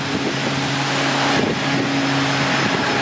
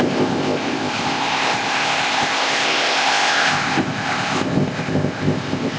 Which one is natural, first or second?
first